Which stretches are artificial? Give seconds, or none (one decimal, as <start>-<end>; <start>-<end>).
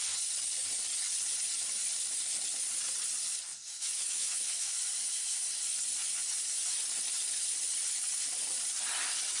3.5-4.7